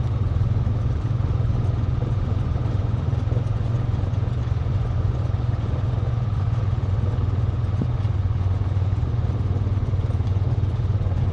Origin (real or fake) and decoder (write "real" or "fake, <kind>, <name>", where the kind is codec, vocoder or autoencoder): fake, vocoder, Vocos